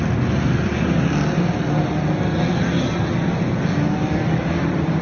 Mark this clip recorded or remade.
recorded